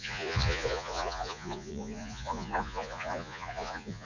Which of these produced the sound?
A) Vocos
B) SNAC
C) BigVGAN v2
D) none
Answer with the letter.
A